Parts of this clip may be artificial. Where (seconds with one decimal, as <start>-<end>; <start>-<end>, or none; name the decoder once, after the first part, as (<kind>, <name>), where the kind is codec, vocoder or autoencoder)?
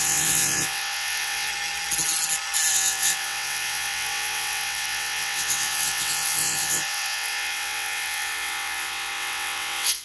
0.0-1.5 (vocoder, WaveNeXt); 2.7-10.0